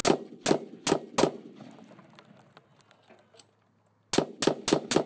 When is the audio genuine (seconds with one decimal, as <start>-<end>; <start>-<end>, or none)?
0.0-5.1